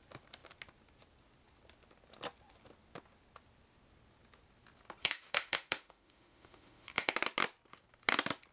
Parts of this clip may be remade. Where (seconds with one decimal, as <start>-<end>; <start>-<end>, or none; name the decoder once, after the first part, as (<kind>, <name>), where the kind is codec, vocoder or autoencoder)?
5.0-7.1 (autoencoder, DAC-VAE)